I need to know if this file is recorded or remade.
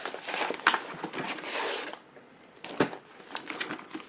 recorded